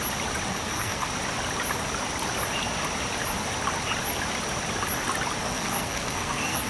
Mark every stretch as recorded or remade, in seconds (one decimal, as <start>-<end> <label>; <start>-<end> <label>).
0.0-0.5 recorded; 0.5-1.1 remade; 1.1-5.4 recorded; 5.4-6.7 remade

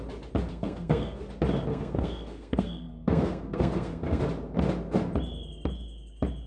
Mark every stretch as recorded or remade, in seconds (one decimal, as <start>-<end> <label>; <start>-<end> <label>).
0.0-0.5 recorded; 0.5-1.2 remade; 1.2-1.7 recorded; 1.7-4.2 remade; 4.2-6.5 recorded

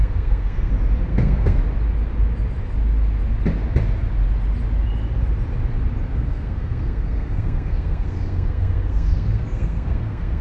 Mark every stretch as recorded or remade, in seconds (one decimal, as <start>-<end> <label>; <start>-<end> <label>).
0.0-0.7 remade; 0.7-1.1 recorded; 1.1-1.6 remade; 1.6-6.1 recorded; 6.1-10.4 remade